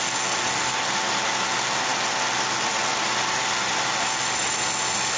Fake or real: real